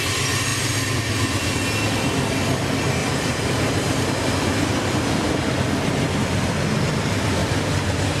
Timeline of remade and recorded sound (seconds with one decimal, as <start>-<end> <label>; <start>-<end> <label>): 0.0-3.0 recorded; 3.0-5.5 remade; 5.5-7.4 recorded; 7.4-8.2 remade